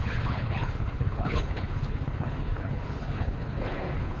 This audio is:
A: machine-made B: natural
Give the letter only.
A